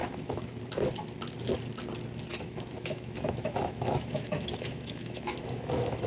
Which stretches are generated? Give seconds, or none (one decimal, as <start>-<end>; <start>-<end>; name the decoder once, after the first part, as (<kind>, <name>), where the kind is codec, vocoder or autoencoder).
0.0-0.6 (autoencoder, DAC-VAE); 2.3-6.1